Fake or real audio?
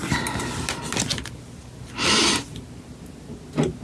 real